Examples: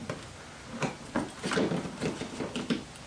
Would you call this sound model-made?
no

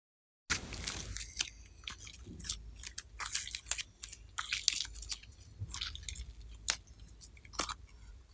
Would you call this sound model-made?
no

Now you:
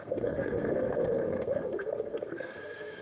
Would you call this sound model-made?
yes